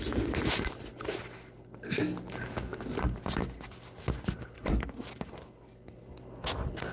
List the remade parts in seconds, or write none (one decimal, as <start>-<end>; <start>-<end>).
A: none